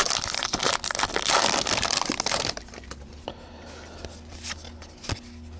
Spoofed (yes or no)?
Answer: no